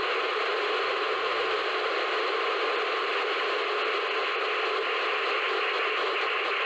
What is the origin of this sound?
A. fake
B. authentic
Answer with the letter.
B